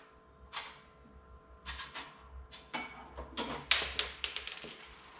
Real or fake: real